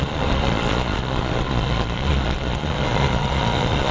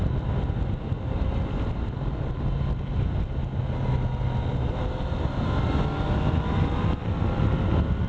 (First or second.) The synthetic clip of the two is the first